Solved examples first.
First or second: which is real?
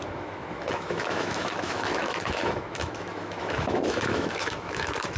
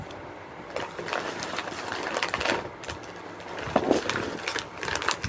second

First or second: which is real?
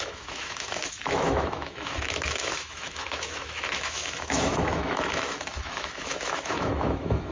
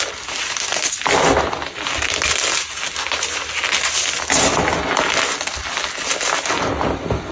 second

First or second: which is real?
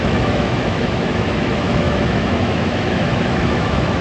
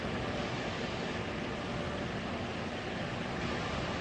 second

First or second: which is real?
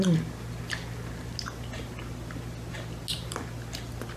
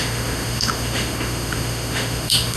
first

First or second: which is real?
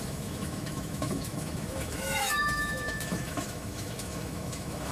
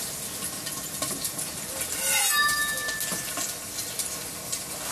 second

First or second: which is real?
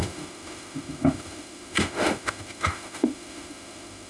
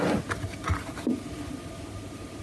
second